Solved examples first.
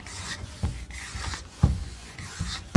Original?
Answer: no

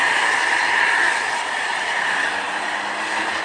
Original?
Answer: yes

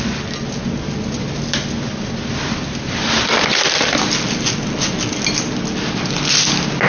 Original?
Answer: yes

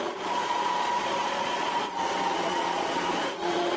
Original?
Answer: no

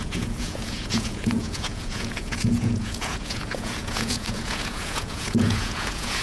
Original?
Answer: no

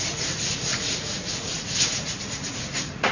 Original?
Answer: no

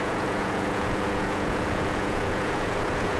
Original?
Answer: no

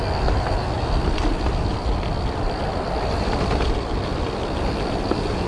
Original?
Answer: yes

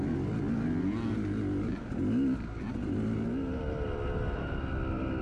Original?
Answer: yes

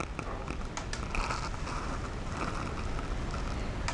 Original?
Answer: yes